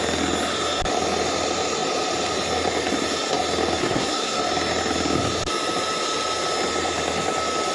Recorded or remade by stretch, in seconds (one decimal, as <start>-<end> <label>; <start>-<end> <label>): 0.0-3.8 recorded; 3.8-4.4 remade; 4.4-7.7 recorded